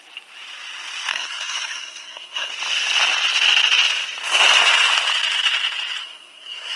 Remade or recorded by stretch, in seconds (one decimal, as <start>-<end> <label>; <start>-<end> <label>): 0.0-1.1 recorded; 1.1-2.5 remade; 2.5-6.0 recorded; 6.0-6.8 remade